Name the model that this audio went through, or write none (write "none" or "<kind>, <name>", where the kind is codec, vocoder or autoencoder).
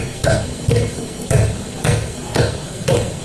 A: codec, SNAC